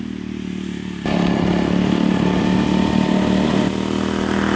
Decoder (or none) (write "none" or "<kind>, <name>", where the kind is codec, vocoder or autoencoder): none